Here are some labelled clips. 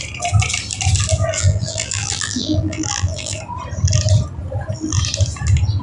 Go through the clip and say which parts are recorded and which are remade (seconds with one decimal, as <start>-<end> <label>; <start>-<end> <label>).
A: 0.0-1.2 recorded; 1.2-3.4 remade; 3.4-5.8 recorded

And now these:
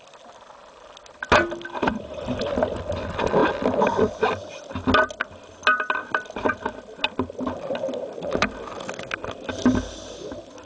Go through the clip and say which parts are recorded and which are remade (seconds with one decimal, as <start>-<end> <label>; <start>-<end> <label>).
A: 0.0-3.4 recorded; 3.4-4.2 remade; 4.2-10.7 recorded

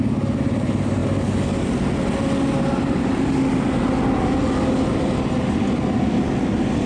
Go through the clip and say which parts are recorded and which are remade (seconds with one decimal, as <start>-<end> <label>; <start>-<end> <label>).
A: 0.0-6.9 recorded